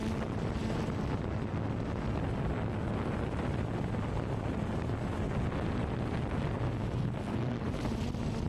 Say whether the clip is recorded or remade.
recorded